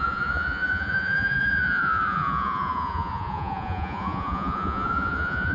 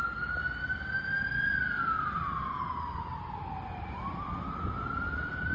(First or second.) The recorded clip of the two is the second